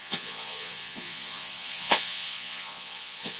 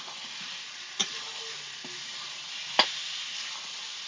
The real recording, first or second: second